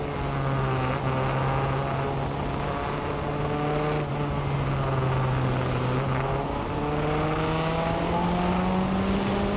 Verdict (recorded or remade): recorded